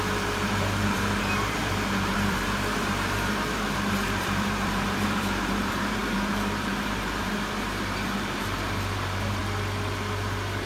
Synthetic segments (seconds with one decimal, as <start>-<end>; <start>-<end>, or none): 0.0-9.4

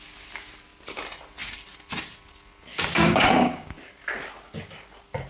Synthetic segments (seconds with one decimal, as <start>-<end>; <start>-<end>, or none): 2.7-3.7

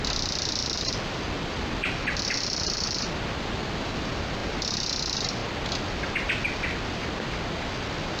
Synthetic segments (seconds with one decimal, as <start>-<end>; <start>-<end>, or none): 0.6-3.0

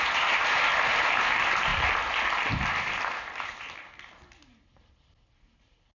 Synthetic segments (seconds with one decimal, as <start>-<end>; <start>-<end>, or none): none